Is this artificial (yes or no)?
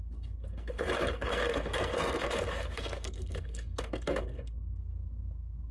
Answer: yes